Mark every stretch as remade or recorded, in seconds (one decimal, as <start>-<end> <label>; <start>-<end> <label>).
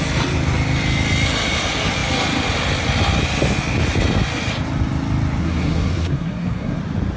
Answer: 0.0-5.4 recorded; 5.4-6.8 remade; 6.8-7.2 recorded